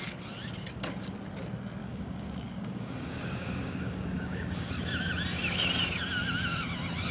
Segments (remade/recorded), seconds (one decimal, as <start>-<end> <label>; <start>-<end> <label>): 0.0-1.8 recorded; 1.8-4.8 remade; 4.8-7.1 recorded